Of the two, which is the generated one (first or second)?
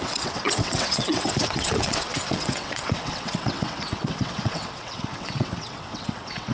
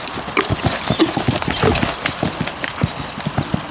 first